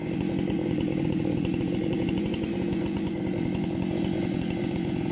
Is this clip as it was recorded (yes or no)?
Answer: no